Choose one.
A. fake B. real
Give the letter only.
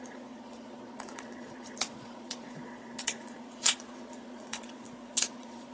A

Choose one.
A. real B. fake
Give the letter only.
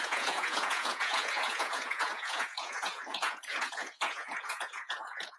B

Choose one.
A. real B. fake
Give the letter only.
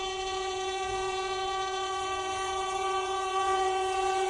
B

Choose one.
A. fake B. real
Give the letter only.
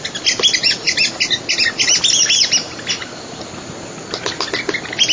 B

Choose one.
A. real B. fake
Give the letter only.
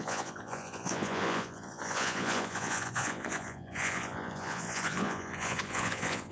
B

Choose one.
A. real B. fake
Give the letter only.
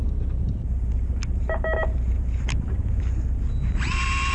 A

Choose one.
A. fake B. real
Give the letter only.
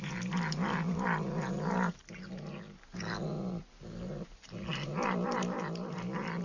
B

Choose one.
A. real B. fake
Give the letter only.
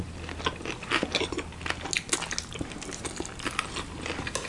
A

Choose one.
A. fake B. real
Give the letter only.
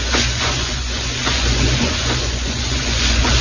A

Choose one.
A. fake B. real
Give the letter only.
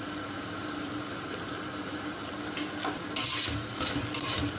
B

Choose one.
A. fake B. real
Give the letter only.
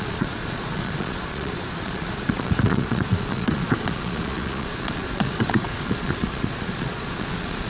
A